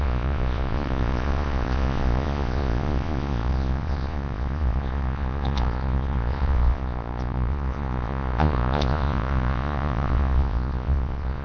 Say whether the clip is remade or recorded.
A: remade